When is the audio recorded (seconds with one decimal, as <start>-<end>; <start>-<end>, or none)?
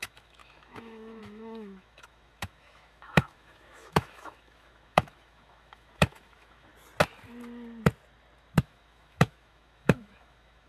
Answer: 6.7-8.6